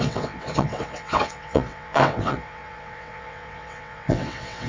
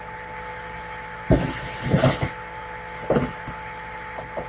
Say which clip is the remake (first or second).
first